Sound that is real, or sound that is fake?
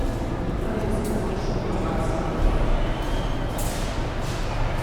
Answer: real